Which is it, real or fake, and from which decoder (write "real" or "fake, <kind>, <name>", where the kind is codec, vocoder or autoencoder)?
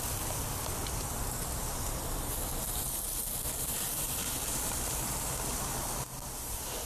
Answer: real